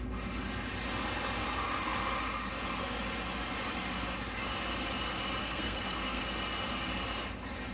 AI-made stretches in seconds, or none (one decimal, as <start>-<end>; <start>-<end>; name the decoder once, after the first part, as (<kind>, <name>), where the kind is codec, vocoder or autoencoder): 5.4-6.2 (codec, SNAC)